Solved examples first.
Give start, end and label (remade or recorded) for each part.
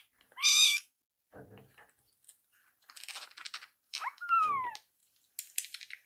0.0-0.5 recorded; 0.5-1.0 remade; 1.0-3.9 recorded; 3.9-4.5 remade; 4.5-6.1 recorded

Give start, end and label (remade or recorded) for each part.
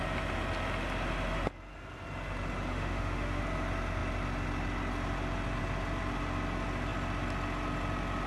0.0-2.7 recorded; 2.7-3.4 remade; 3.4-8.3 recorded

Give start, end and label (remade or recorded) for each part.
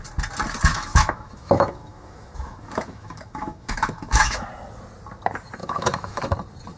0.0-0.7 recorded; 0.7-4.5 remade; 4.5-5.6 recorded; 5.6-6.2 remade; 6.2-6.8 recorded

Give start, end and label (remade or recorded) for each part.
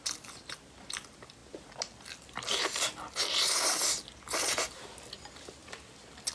0.0-6.3 recorded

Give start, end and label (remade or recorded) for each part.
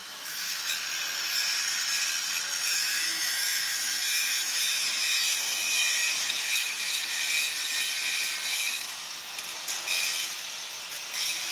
0.0-0.6 remade; 0.6-2.6 recorded; 2.6-7.2 remade; 7.2-8.5 recorded; 8.5-9.1 remade; 9.1-11.5 recorded